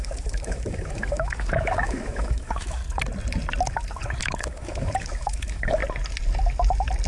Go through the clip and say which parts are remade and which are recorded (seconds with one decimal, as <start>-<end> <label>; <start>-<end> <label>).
0.0-2.8 remade; 2.8-4.2 recorded; 4.2-5.8 remade; 5.8-7.1 recorded